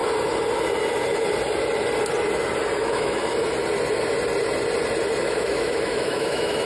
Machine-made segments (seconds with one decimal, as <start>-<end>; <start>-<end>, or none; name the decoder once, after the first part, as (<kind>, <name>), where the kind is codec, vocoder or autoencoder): 2.8-3.2 (autoencoder, DAC-VAE); 5.2-6.7